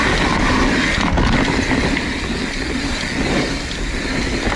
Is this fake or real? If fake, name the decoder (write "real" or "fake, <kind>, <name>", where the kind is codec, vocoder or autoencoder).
real